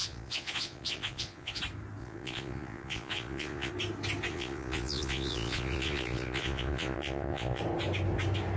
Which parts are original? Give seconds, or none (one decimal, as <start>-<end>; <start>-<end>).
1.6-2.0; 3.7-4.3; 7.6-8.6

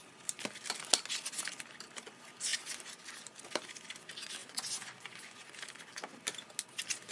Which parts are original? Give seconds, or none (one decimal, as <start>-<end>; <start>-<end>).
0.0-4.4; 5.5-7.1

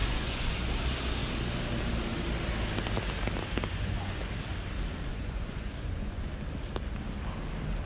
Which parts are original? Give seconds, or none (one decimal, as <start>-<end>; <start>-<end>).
0.7-3.7; 4.3-5.1; 6.3-7.9

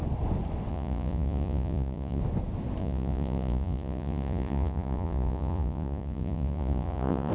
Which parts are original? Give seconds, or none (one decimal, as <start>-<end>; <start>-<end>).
0.0-0.7; 2.2-2.8

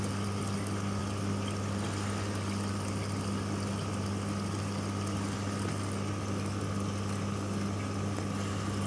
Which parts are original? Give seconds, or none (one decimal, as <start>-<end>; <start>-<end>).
0.0-8.9

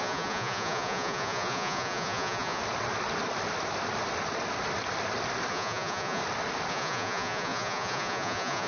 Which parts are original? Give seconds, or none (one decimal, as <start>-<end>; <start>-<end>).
2.6-5.5; 6.2-6.7

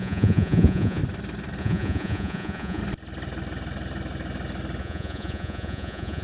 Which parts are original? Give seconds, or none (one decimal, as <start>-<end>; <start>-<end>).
1.0-1.6; 2.8-4.8

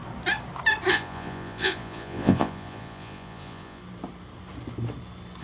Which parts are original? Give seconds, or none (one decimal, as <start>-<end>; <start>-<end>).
0.0-0.9; 3.8-5.4